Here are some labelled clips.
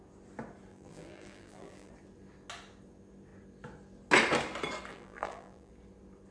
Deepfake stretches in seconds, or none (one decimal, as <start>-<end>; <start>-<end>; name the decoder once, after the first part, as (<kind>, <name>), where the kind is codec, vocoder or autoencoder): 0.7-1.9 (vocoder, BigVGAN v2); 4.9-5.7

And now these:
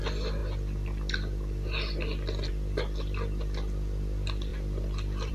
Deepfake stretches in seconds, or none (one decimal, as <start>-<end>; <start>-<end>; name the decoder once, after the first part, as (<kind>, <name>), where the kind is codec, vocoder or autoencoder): 4.5-5.3 (vocoder, BigVGAN v2)

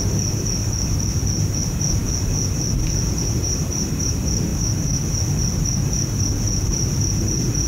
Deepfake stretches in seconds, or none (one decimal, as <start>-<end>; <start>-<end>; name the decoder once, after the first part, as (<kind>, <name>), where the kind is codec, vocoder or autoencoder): none